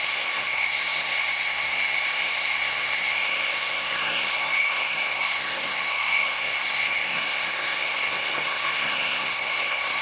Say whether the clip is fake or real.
fake